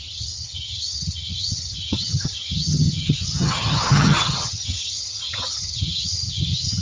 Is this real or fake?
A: fake